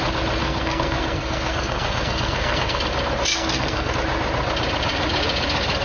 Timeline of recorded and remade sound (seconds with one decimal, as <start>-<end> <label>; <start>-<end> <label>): 0.0-0.4 recorded; 0.4-2.8 remade; 2.8-3.3 recorded; 3.3-3.9 remade; 3.9-5.8 recorded